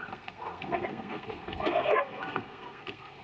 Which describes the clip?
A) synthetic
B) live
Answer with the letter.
A